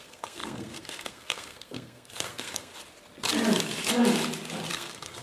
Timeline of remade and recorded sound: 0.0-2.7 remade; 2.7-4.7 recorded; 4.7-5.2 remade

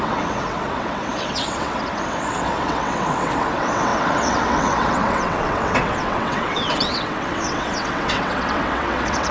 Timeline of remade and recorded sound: 0.0-9.3 remade

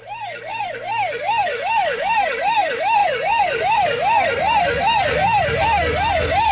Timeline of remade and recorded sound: 0.0-6.5 remade

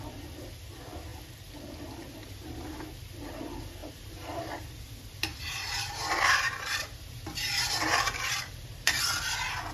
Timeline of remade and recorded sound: 0.0-2.2 recorded; 2.2-2.8 remade; 2.8-3.8 recorded; 3.8-9.0 remade; 9.0-9.7 recorded

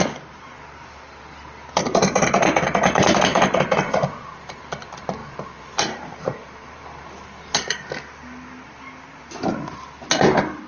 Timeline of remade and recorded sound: 0.0-3.3 recorded; 3.3-4.6 remade; 4.6-5.2 recorded; 5.2-6.8 remade; 6.8-10.7 recorded